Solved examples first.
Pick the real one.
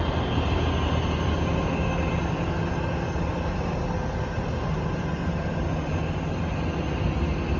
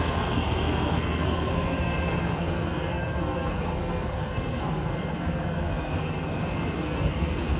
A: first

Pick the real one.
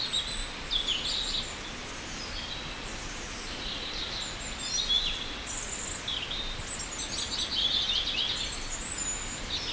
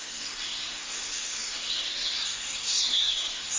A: first